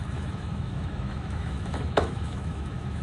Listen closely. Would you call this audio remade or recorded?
remade